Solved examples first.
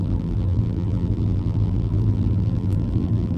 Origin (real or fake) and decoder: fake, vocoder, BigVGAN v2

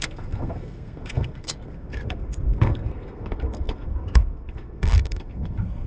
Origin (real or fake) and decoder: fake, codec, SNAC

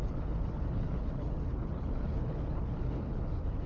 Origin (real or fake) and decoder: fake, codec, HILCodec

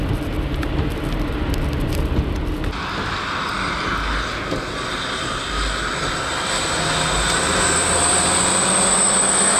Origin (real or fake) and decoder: real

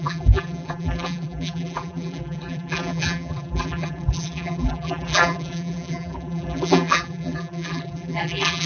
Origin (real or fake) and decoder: fake, vocoder, BigVGAN v2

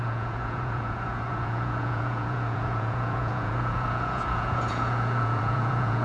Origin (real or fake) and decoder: fake, vocoder, Vocos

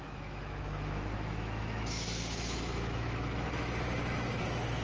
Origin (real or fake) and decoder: fake, autoencoder, DAC-VAE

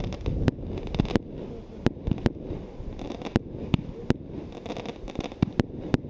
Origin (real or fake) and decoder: real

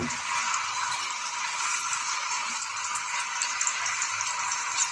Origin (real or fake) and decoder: real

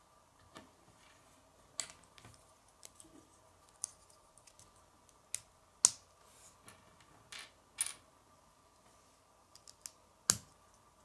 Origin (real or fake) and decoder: real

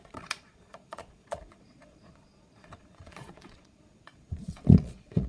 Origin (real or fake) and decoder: fake, vocoder, Vocos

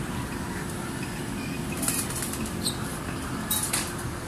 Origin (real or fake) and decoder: real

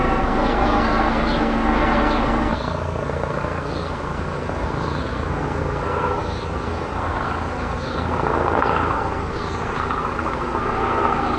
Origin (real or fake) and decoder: fake, codec, SNAC